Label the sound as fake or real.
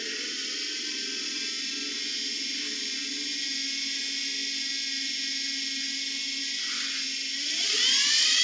real